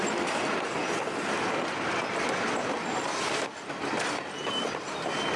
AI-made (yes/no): no